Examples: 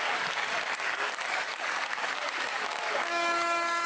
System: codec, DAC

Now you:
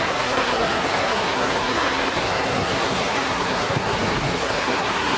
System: codec, SNAC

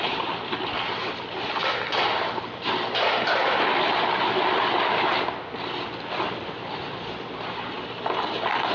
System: vocoder, BigVGAN v2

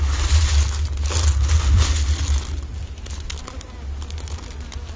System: none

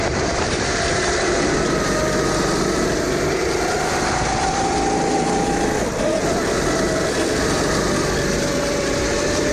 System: none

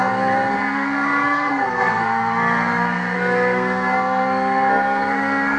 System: codec, SNAC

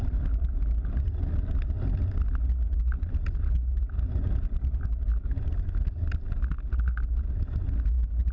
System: none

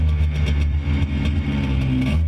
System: none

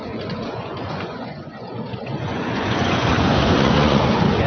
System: vocoder, Vocos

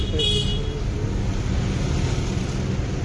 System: none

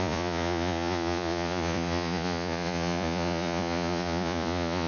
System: vocoder, Vocos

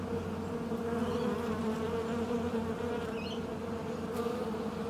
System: none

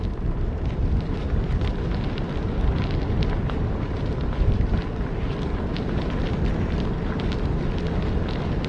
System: none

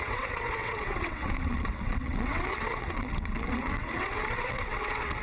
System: vocoder, WaveNeXt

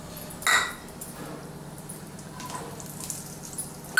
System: none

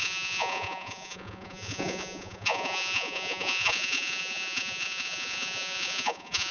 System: vocoder, Vocos